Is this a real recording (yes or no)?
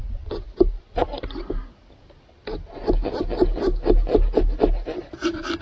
yes